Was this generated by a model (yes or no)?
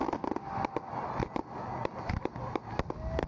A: no